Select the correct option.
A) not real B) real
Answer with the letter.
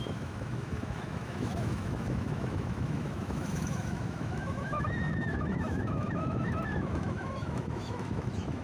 A